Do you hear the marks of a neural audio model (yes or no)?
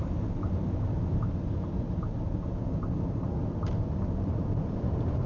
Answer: no